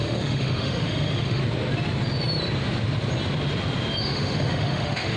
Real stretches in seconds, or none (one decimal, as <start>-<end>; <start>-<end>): 1.4-4.0